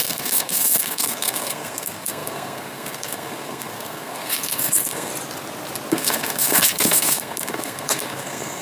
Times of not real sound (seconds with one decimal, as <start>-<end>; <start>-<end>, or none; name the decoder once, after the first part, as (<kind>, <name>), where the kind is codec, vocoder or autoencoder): 0.0-5.1 (codec, SNAC); 5.9-8.6